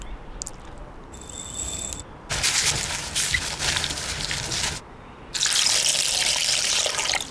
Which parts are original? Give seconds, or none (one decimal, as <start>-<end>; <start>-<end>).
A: 0.0-5.9